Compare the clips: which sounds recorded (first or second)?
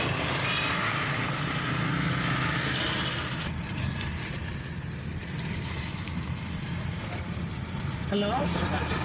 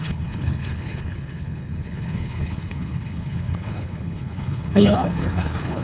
first